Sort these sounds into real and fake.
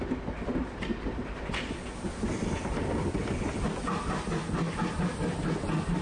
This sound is real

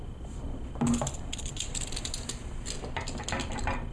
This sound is real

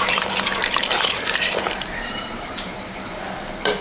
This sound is fake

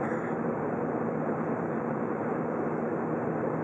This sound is fake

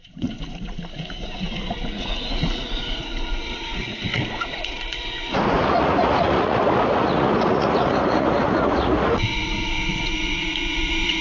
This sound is fake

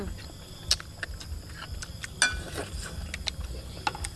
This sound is real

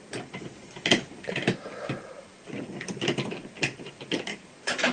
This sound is real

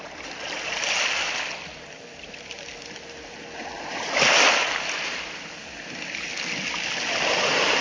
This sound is real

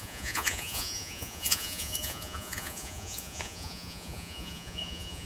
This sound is fake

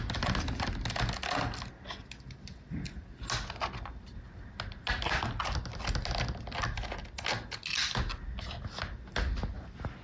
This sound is real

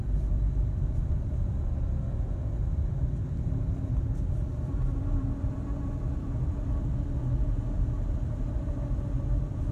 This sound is fake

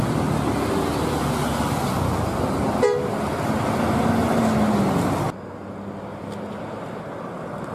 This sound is real